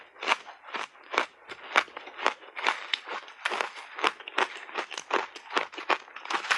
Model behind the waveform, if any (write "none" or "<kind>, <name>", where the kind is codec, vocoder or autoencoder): none